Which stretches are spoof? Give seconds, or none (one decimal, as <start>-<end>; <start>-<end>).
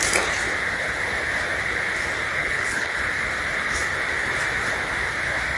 2.4-3.0